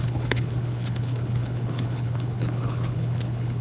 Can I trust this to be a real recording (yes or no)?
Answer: no